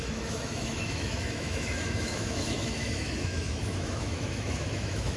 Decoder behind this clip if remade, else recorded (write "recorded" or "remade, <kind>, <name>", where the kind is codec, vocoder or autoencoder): remade, autoencoder, DAC-VAE